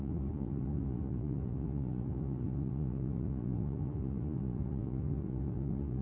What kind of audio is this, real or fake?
fake